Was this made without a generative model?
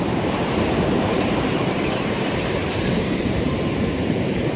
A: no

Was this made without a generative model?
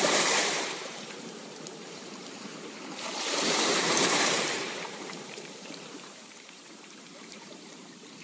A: no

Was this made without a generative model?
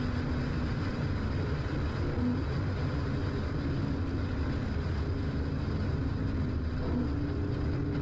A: yes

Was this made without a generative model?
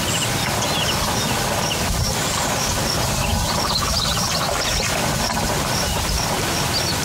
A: yes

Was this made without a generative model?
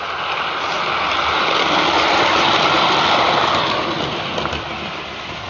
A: no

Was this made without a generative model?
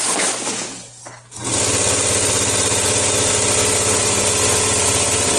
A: yes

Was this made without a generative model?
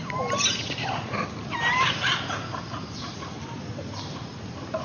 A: yes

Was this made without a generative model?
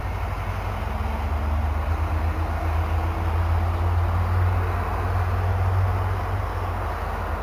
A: yes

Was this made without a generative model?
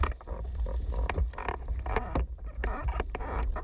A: no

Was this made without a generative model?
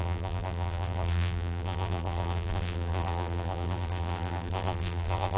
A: no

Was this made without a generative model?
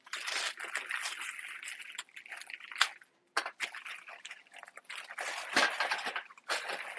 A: yes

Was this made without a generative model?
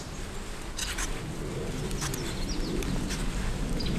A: yes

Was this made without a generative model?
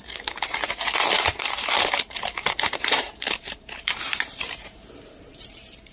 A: no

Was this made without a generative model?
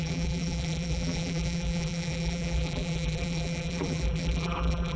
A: no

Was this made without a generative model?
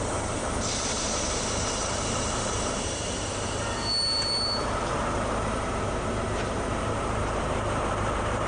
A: no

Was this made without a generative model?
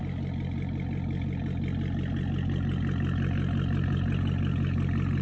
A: yes